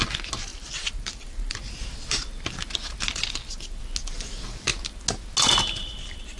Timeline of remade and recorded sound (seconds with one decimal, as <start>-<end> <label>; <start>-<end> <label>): 0.0-0.5 recorded; 0.5-1.6 remade; 1.6-3.1 recorded; 3.1-3.8 remade; 3.8-6.4 recorded